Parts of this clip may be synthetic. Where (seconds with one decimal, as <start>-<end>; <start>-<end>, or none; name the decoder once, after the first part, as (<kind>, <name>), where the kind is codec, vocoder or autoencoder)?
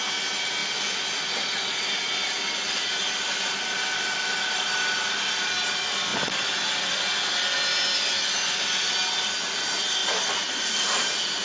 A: none